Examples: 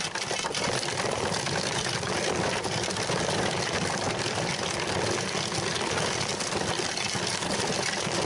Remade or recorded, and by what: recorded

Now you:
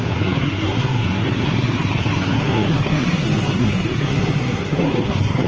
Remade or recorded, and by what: remade, codec, SNAC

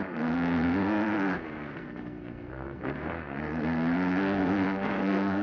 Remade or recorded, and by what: remade, codec, SNAC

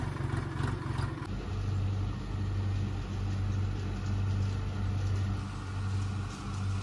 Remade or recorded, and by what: recorded